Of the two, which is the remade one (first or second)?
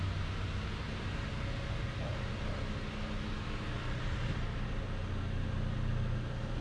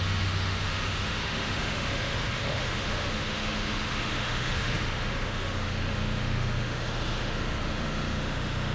second